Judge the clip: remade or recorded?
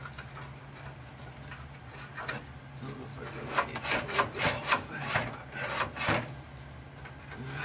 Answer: recorded